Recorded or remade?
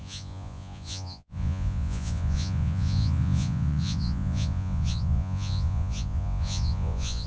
remade